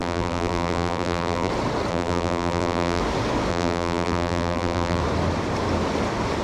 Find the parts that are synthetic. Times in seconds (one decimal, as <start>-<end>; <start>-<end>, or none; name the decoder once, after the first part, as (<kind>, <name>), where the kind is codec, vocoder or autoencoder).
0.0-1.5 (vocoder, BigVGAN v2); 1.9-3.0; 3.5-5.0